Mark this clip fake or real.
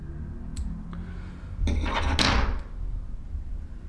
real